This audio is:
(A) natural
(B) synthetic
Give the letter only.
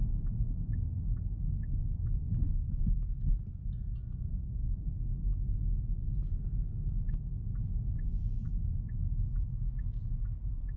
A